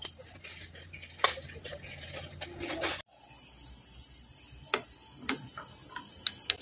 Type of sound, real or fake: real